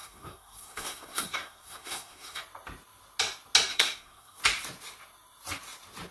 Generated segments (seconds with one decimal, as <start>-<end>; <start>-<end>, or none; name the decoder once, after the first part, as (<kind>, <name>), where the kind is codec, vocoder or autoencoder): 0.0-2.4 (codec, SNAC); 3.7-4.4